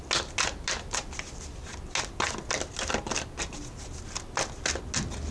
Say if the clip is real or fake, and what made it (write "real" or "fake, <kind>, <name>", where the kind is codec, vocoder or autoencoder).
real